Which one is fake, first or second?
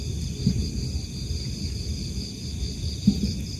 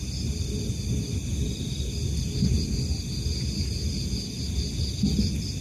first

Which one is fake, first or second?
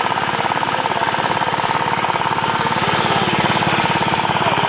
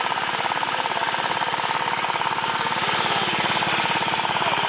second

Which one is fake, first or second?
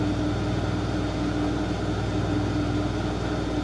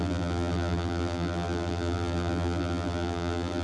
second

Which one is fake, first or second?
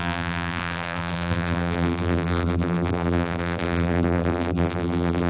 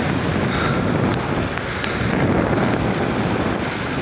first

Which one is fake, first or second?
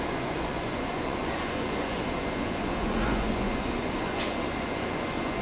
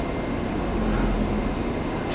first